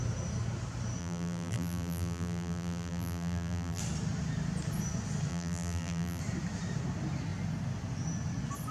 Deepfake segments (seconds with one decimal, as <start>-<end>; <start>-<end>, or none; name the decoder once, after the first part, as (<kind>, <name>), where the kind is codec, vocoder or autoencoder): 1.0-3.8 (vocoder, BigVGAN v2); 5.3-6.2